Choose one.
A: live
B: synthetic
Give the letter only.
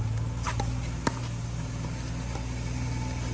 A